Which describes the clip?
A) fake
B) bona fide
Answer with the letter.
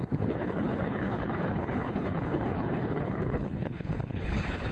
A